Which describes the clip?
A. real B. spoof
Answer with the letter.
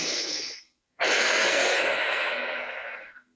B